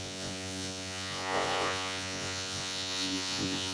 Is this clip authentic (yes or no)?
no